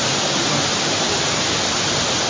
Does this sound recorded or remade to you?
remade